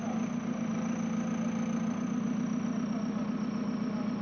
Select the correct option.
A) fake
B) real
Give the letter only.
B